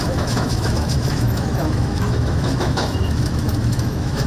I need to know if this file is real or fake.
fake